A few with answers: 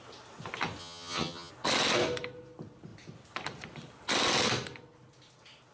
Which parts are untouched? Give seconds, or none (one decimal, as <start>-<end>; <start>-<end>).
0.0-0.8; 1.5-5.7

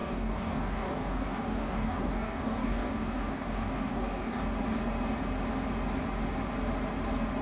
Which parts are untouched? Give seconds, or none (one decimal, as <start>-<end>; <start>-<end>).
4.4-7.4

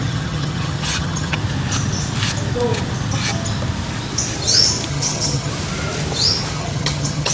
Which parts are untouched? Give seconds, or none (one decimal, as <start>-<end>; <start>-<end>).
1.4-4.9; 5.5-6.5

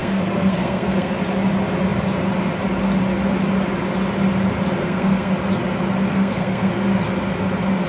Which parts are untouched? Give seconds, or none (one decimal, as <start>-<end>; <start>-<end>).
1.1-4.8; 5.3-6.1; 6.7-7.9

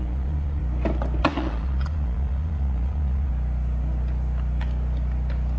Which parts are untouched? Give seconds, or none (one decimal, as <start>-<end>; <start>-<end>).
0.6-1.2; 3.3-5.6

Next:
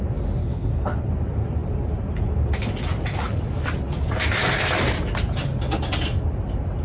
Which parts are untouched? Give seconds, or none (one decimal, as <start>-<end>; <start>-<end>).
0.0-0.4; 1.1-6.8

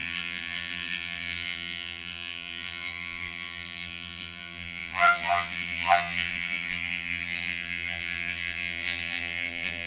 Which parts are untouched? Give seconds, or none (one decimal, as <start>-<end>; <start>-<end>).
none